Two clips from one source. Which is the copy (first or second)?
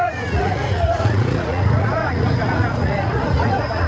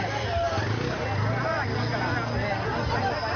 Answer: first